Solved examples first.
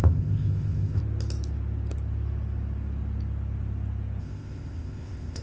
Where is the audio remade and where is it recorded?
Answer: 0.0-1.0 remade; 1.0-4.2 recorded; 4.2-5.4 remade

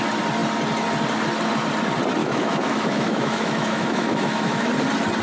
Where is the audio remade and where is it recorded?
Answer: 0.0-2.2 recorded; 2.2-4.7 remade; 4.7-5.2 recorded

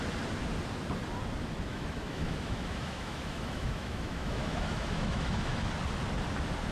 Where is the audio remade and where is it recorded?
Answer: 0.0-1.7 recorded; 1.7-5.7 remade; 5.7-6.7 recorded

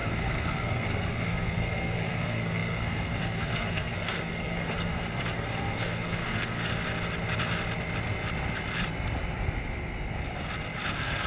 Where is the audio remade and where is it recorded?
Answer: 0.0-6.7 remade; 6.7-10.9 recorded; 10.9-11.3 remade

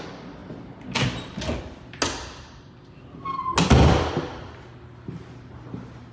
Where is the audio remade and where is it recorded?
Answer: 0.0-6.1 recorded

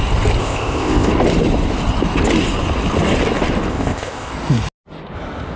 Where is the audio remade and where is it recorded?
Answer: 0.0-0.4 recorded; 0.4-1.1 remade; 1.1-3.7 recorded; 3.7-4.3 remade; 4.3-5.6 recorded